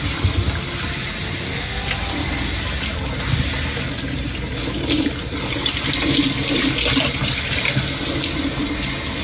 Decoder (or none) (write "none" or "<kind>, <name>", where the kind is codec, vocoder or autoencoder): none